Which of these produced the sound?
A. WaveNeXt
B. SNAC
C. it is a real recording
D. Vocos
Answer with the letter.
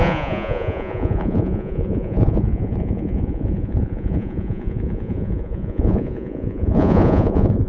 D